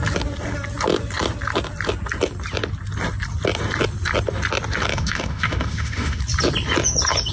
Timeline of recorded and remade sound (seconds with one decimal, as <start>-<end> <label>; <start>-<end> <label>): 0.0-4.9 recorded; 4.9-6.2 remade; 6.2-7.3 recorded